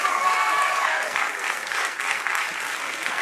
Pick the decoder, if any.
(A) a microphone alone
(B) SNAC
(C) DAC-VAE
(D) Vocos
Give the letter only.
B